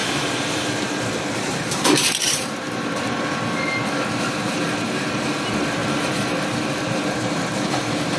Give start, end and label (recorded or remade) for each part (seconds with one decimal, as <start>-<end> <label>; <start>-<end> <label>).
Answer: 0.0-2.6 remade; 2.6-5.8 recorded; 5.8-7.5 remade; 7.5-8.2 recorded

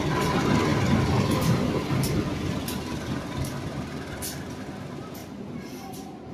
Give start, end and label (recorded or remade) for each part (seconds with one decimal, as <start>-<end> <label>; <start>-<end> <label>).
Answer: 0.0-0.7 recorded; 0.7-4.4 remade; 4.4-5.2 recorded; 5.2-6.3 remade

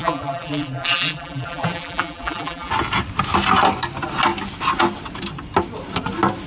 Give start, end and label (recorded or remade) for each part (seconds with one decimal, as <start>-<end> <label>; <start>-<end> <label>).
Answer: 0.0-2.7 remade; 2.7-6.5 recorded

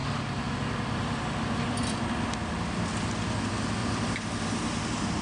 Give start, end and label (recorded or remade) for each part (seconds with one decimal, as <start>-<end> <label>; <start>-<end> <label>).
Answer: 0.0-3.1 remade; 3.1-3.8 recorded; 3.8-4.8 remade; 4.8-5.2 recorded